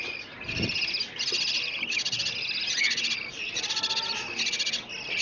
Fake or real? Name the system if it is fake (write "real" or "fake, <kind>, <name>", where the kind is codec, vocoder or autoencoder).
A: real